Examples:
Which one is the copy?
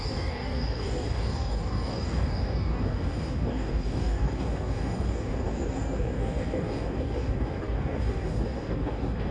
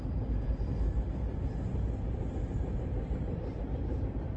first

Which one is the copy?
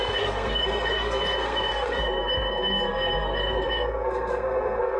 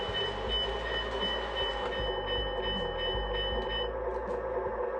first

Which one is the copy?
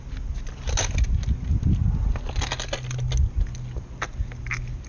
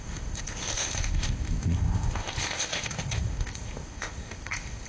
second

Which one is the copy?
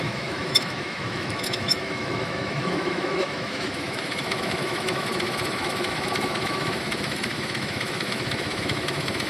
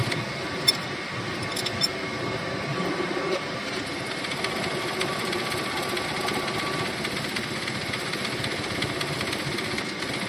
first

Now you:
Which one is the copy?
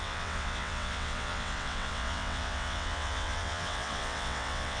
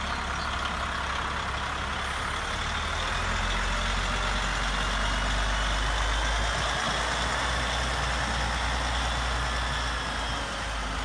first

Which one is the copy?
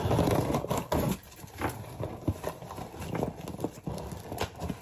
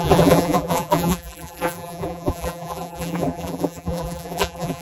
second